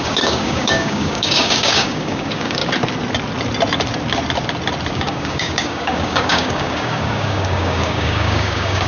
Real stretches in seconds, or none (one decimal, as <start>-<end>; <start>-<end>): 2.6-4.9